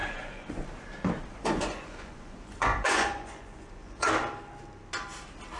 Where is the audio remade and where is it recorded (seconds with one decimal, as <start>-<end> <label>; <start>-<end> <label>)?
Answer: 0.0-0.6 remade; 0.6-1.3 recorded; 1.3-4.1 remade; 4.1-5.6 recorded